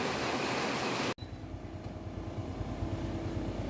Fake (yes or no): no